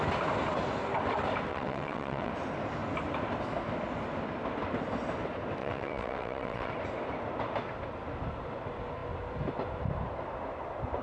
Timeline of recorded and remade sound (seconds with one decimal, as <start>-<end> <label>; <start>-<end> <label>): 0.0-1.5 recorded; 1.5-2.3 remade; 2.3-5.6 recorded; 5.6-6.7 remade; 6.7-11.0 recorded